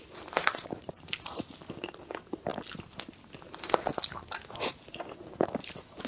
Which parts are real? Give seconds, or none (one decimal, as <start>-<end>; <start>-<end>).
2.5-4.9